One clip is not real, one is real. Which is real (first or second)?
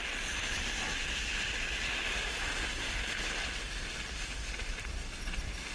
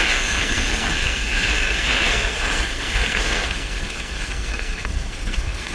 first